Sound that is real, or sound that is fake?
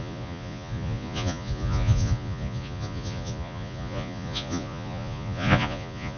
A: fake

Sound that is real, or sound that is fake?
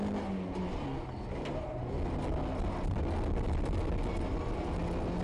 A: real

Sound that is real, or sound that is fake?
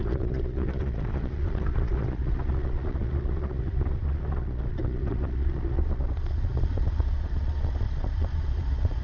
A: fake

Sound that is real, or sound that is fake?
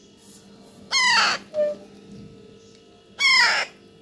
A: real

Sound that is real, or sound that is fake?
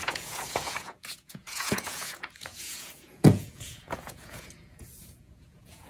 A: fake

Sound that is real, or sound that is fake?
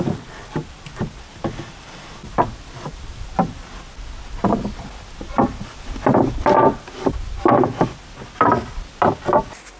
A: real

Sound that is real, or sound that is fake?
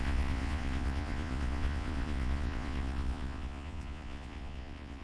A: fake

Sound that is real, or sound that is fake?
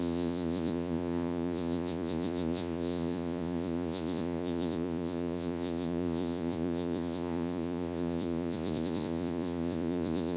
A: fake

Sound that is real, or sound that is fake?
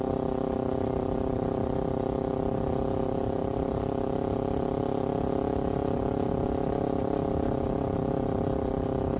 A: real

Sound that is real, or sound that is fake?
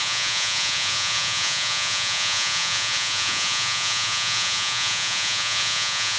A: fake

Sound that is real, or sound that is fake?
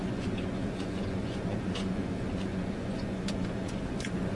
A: fake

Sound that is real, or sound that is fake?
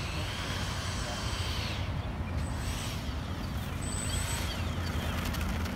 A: real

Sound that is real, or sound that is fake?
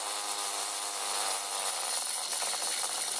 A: real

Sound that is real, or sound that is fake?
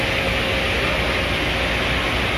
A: real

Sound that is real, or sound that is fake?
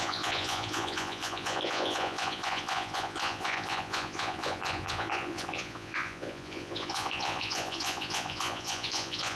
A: fake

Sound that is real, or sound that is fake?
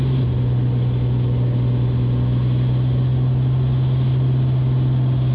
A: real